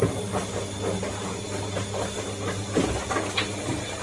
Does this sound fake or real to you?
real